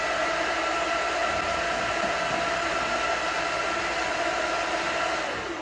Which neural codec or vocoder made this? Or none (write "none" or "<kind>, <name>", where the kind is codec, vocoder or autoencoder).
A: none